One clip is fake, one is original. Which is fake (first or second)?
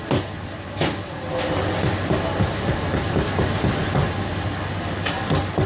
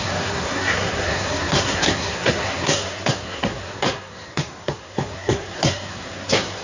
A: second